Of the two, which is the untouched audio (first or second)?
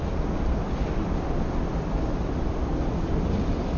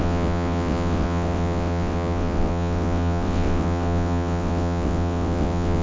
first